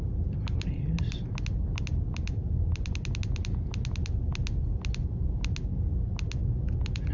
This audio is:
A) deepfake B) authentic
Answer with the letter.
B